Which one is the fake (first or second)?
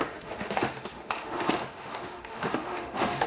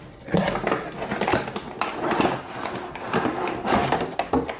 first